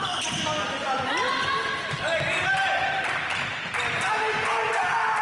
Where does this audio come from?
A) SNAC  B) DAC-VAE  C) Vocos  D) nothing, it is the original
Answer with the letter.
D